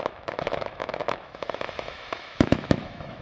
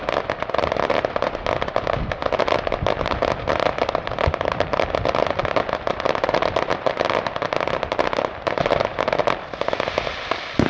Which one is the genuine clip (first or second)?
second